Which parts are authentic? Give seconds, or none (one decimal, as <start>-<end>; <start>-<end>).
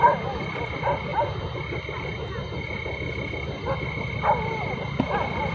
0.0-5.5